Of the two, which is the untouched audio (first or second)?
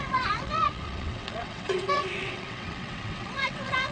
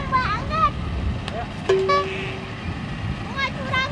second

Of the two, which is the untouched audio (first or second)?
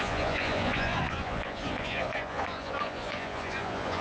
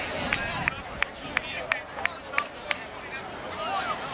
second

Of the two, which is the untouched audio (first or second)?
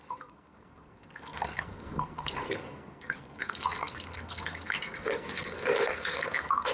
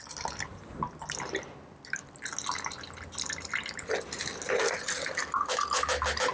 second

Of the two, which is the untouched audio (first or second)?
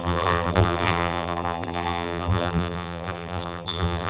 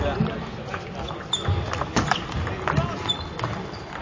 second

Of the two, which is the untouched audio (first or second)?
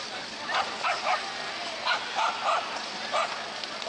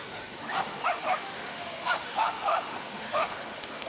first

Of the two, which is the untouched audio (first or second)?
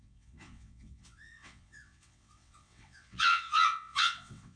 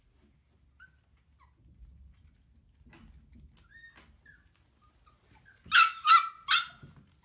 second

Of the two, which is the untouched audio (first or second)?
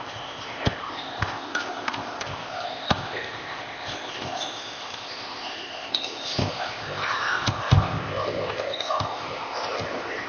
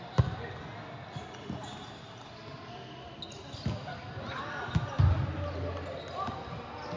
second